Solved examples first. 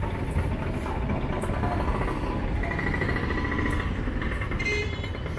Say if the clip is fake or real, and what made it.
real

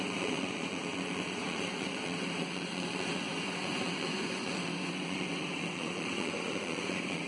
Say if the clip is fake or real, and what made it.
fake, vocoder, Vocos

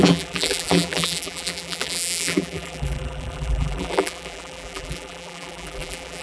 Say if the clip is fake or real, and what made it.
fake, vocoder, BigVGAN v2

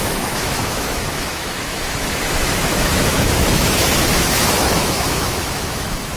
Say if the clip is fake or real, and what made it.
fake, autoencoder, DAC-VAE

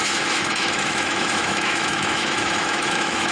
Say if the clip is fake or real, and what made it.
fake, autoencoder, DAC-VAE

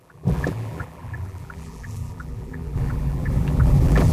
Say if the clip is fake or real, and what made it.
fake, vocoder, BigVGAN v2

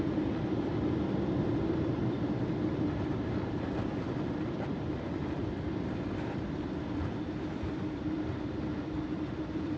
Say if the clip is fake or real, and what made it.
fake, vocoder, BigVGAN v2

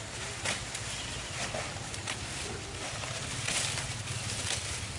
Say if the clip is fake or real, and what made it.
real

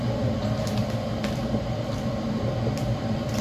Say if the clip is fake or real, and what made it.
fake, vocoder, BigVGAN v2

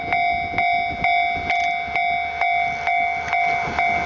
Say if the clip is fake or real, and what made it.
real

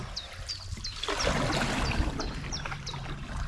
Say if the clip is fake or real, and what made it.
real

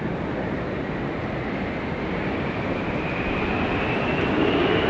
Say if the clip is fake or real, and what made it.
real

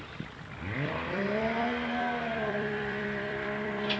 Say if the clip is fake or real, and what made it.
fake, vocoder, BigVGAN v2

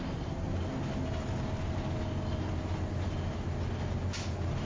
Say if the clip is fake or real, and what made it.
real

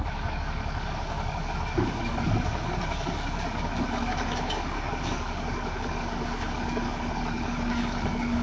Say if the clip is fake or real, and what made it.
fake, codec, DAC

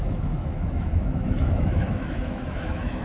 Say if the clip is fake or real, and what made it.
fake, autoencoder, DAC-VAE